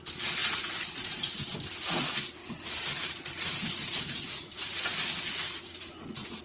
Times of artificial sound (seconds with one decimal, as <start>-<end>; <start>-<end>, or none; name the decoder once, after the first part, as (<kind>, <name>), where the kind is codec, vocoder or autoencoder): 0.4-1.3 (vocoder, Vocos); 2.4-6.4